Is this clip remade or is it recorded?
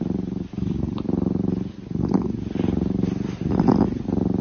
recorded